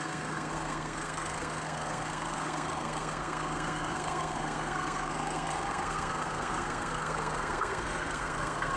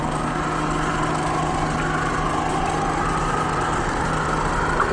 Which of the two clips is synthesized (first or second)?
first